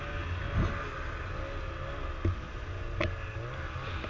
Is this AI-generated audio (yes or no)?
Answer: no